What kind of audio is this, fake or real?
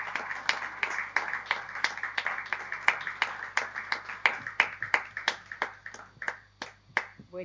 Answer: real